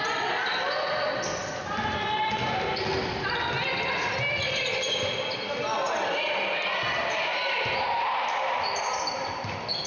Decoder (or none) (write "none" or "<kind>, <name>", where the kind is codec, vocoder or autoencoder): none